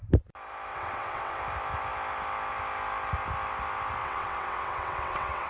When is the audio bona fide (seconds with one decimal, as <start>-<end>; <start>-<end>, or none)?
0.0-0.7; 1.4-4.0

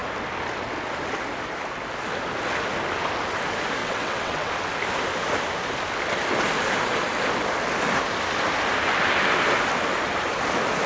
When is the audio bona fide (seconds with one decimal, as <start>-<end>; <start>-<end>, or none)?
0.0-3.8; 4.5-10.9

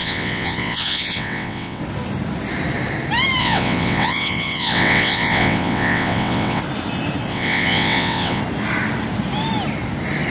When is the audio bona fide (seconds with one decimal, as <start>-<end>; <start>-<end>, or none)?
1.8-3.4; 6.6-7.3; 8.4-10.3

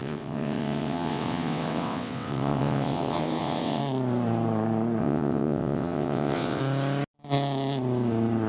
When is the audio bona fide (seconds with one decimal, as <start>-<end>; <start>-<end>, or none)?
3.8-5.0; 6.6-8.5